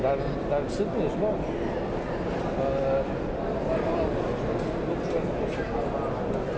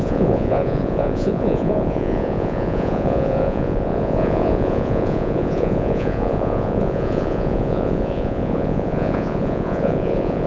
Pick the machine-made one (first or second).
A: second